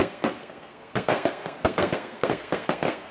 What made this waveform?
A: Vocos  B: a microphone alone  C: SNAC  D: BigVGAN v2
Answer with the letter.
C